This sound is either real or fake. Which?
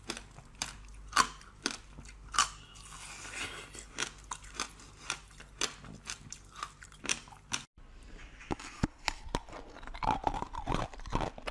real